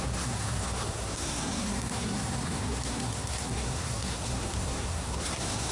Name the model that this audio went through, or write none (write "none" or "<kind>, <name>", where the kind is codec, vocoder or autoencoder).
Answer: codec, SNAC